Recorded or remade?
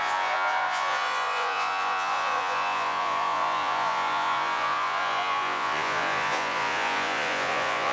remade